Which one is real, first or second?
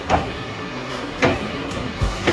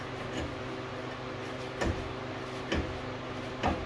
second